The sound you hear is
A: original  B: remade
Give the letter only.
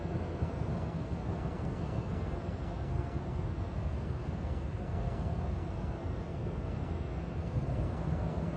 B